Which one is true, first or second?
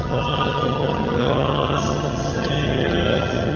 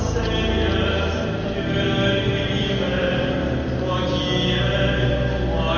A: second